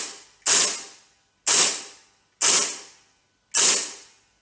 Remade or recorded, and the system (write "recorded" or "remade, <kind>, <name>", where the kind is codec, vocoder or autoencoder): recorded